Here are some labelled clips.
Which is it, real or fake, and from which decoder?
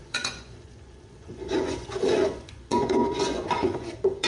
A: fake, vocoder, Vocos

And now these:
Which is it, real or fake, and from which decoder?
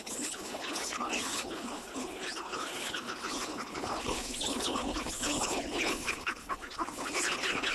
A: fake, codec, HILCodec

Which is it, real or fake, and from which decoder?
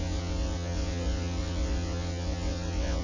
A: fake, vocoder, WaveNeXt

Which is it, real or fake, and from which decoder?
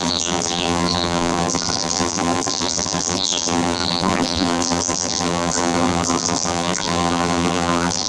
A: fake, vocoder, BigVGAN v2